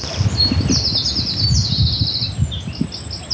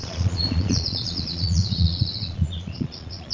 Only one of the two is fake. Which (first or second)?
second